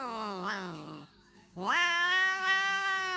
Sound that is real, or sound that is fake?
fake